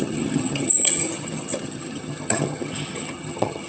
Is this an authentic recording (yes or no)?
no